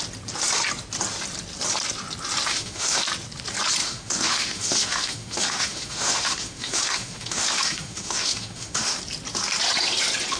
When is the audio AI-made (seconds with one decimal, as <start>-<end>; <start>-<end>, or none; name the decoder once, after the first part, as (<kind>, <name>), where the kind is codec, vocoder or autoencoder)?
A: 2.5-3.0 (autoencoder, DAC-VAE); 3.8-9.0